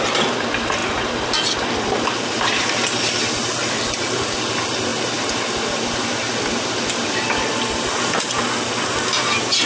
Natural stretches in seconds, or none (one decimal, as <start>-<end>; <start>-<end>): 0.0-9.7